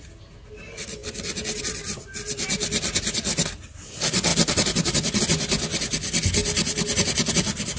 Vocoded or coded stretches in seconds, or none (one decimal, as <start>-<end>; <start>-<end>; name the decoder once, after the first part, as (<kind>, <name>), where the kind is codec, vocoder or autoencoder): none